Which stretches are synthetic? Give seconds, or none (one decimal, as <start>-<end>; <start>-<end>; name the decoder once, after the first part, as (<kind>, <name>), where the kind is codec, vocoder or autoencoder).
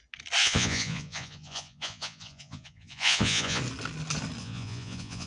0.4-3.6 (vocoder, Vocos); 4.4-5.3